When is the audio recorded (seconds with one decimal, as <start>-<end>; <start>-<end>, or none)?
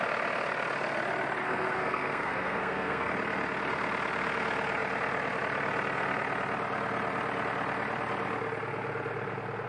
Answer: 0.0-1.4; 3.1-9.7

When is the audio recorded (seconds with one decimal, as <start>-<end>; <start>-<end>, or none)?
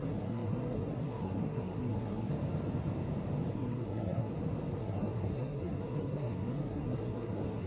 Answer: 2.3-3.5; 4.3-4.8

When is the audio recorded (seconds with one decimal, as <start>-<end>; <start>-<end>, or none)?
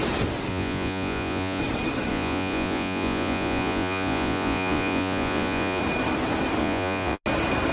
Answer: 0.0-0.5; 1.6-2.1; 5.8-6.6; 7.2-7.7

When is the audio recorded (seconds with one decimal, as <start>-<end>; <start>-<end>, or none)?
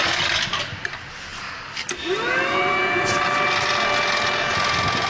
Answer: 0.0-5.1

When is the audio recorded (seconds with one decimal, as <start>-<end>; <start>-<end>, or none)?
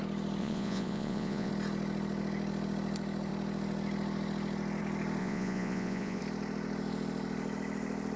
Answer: 0.0-0.4; 1.5-5.2; 6.2-8.2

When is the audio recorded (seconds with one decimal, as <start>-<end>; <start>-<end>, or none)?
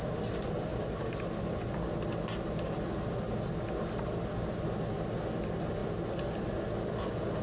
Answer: 0.0-7.4